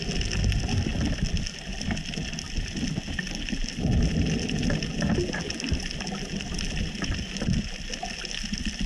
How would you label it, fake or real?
real